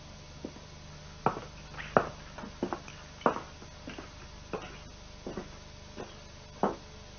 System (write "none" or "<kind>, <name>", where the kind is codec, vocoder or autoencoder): none